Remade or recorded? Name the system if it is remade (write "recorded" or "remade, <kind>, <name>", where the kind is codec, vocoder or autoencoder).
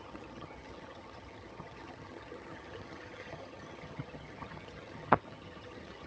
remade, vocoder, HiFi-GAN